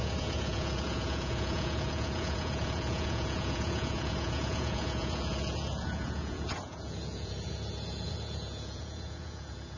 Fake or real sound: fake